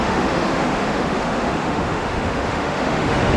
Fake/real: fake